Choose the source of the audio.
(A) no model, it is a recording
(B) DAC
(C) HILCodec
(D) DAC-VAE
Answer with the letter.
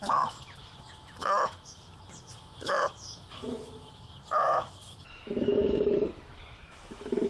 D